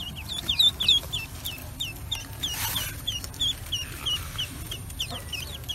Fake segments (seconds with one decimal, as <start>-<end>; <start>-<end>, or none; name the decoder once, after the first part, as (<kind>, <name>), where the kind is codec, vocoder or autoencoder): none